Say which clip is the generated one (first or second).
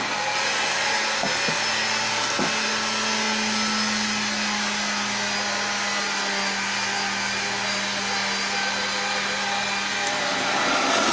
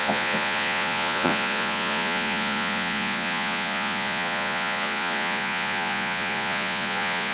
second